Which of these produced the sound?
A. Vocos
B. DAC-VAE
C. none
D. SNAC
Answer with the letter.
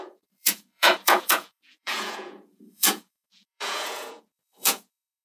A